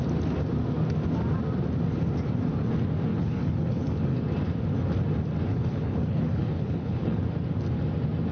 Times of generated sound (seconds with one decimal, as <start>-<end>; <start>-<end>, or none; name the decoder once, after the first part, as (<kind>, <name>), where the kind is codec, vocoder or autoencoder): 3.1-4.2 (codec, HILCodec); 5.5-7.2